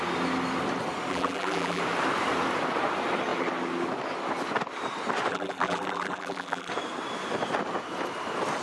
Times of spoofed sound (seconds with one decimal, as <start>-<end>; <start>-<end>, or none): 1.1-1.8; 5.3-6.7